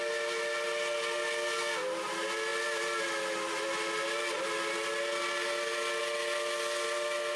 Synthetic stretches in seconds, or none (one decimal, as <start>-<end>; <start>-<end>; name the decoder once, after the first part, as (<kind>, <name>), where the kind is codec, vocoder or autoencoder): none